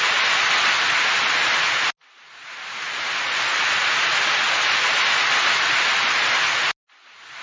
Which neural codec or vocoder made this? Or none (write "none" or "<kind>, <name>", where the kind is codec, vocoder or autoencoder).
none